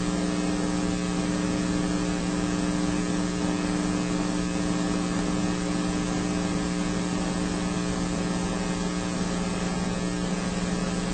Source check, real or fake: real